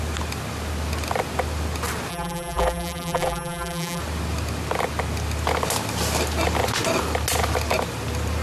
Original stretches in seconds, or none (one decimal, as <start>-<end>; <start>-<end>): 0.0-2.1; 4.0-8.4